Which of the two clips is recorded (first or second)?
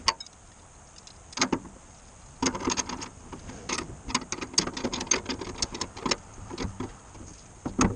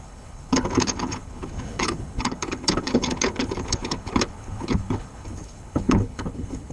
first